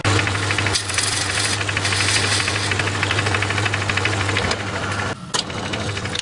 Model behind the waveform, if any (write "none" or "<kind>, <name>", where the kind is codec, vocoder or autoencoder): none